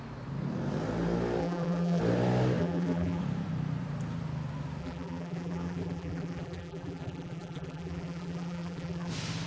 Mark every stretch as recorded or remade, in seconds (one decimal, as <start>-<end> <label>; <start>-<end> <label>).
0.0-1.4 recorded; 1.4-2.0 remade; 2.0-2.6 recorded; 2.6-3.2 remade; 3.2-4.8 recorded; 4.8-9.1 remade; 9.1-9.5 recorded